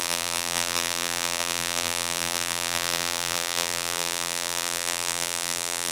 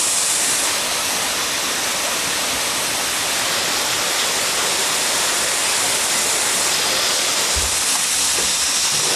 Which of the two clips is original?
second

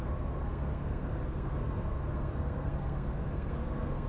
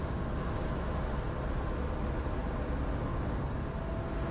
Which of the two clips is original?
second